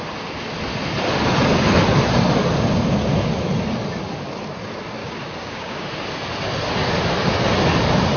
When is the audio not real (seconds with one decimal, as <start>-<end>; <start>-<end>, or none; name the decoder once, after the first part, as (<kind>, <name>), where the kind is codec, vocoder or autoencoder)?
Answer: 5.0-5.9 (codec, DAC)